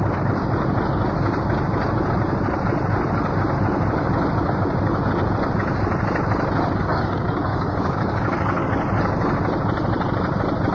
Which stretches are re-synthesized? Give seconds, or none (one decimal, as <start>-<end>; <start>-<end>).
6.8-8.7